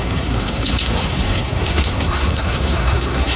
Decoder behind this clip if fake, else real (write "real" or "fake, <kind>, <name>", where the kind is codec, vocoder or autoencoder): fake, codec, SNAC